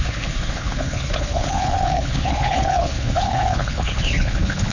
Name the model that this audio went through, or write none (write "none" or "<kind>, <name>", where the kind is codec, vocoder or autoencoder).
codec, HILCodec